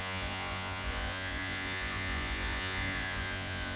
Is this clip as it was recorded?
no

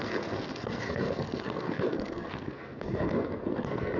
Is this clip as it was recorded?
no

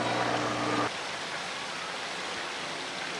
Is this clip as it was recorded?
yes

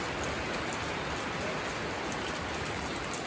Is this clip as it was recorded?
yes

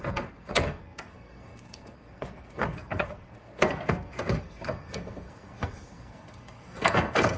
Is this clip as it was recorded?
no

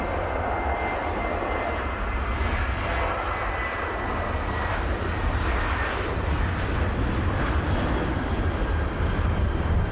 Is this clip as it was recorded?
yes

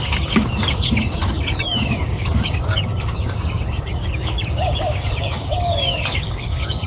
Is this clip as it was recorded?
no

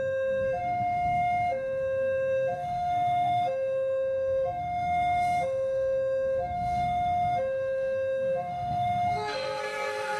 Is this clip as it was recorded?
no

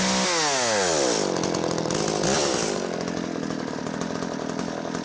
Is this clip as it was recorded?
yes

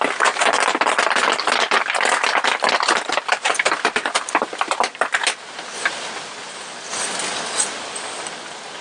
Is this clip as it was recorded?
yes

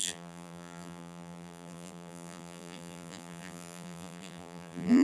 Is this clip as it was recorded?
no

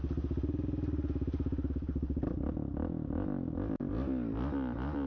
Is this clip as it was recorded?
yes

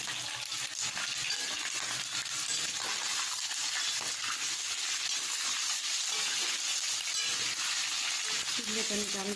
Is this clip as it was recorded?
yes